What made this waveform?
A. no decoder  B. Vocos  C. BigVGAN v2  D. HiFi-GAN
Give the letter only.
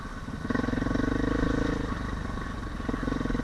C